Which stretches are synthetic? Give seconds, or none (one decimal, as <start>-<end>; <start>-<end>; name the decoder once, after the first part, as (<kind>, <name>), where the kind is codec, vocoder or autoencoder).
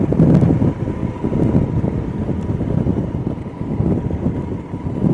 none